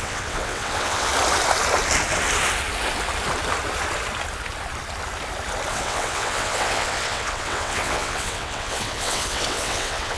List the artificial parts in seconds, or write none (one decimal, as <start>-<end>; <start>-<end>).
0.0-1.1; 5.7-10.2